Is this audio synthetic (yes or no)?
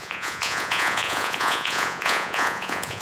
yes